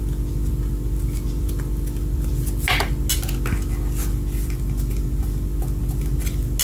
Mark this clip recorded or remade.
recorded